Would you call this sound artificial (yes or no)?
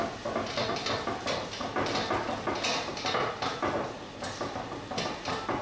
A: no